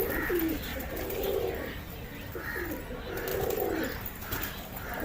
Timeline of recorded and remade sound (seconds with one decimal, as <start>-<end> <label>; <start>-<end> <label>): 0.0-0.7 recorded; 0.7-1.3 remade; 1.3-5.0 recorded